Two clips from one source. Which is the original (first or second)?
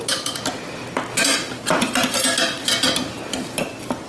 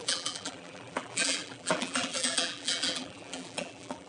first